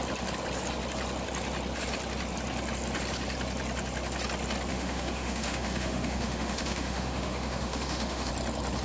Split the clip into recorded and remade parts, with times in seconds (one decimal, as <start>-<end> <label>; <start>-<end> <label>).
0.0-4.7 recorded; 4.7-8.3 remade; 8.3-8.8 recorded